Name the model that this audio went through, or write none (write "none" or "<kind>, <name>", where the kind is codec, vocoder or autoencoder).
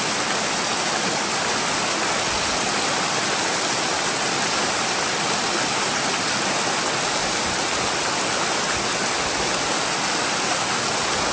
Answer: none